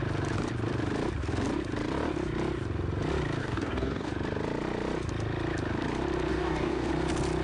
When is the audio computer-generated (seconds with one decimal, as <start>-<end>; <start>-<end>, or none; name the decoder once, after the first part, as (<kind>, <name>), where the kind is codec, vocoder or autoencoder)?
3.4-4.1 (codec, DAC); 6.3-6.9